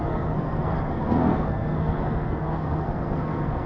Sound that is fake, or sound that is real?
fake